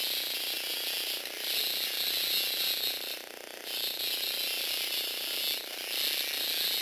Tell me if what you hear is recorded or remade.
recorded